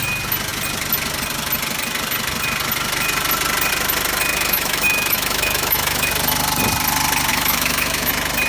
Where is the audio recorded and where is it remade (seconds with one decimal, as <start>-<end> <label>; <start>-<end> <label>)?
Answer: 0.0-4.3 recorded; 4.3-6.1 remade; 6.1-7.3 recorded; 7.3-8.1 remade; 8.1-8.5 recorded